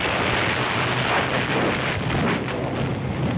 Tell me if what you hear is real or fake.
real